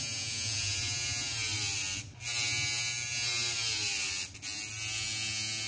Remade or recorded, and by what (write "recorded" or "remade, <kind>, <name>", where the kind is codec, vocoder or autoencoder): recorded